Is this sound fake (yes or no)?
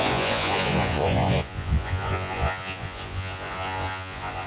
yes